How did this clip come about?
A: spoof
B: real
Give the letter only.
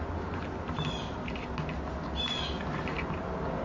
B